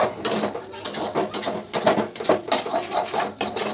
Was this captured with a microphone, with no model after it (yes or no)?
yes